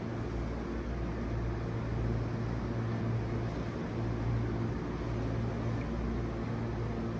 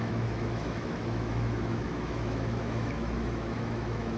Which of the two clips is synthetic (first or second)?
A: second